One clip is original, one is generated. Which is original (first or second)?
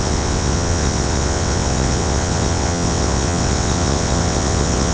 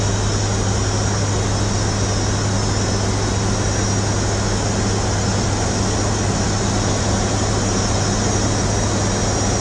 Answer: second